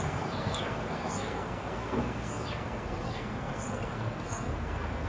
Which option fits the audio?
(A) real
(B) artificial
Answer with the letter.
B